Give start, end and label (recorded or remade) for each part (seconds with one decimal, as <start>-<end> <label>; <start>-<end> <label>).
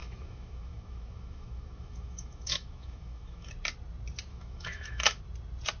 0.0-3.5 remade; 3.5-4.3 recorded; 4.3-5.2 remade; 5.2-5.8 recorded